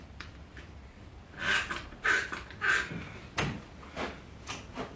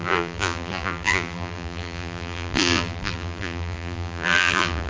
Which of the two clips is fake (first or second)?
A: second